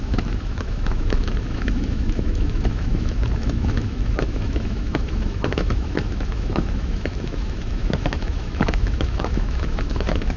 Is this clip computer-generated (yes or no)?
yes